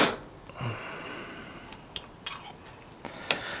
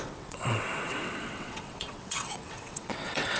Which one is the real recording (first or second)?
first